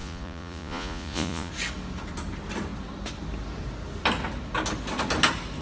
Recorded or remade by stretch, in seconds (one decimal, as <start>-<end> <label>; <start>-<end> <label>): 0.0-1.5 remade; 1.5-5.6 recorded